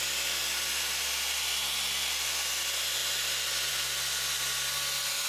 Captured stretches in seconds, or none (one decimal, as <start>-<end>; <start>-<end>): 0.0-5.3